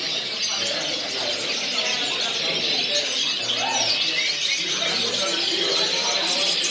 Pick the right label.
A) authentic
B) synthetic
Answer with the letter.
A